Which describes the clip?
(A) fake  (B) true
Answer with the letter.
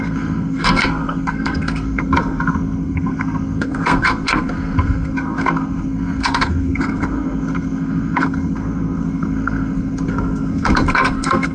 A